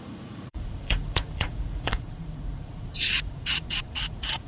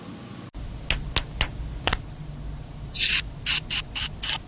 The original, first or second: second